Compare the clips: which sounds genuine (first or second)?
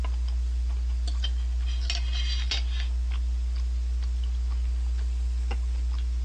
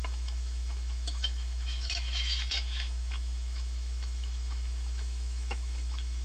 first